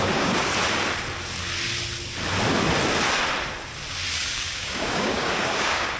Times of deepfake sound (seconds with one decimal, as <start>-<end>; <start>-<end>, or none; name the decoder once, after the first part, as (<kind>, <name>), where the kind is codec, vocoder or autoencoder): 0.0-0.5 (codec, DAC); 4.1-6.0